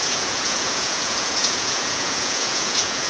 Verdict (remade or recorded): remade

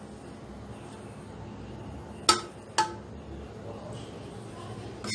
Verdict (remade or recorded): recorded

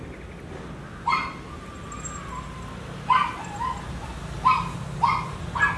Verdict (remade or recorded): recorded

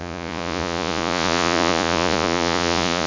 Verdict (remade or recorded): remade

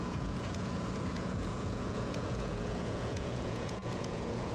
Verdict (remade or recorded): remade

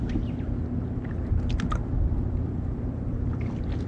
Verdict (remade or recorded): recorded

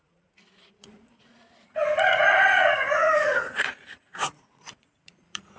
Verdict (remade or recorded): remade